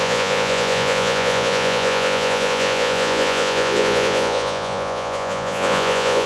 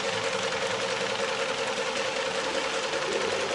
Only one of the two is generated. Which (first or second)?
first